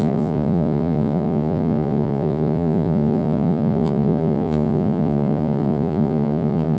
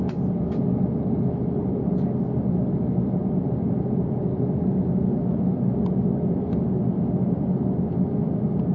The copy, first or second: first